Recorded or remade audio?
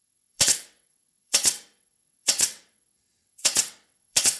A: remade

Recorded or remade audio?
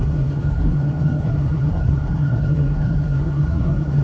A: remade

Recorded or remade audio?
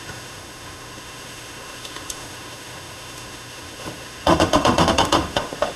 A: remade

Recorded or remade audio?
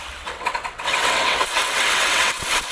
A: remade